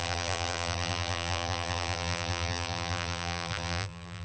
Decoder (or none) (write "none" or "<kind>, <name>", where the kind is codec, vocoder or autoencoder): vocoder, BigVGAN v2